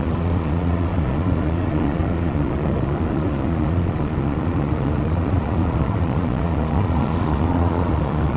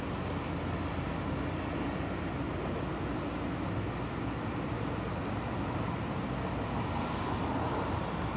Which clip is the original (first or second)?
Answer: second